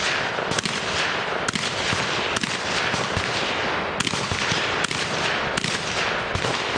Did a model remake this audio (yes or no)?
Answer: no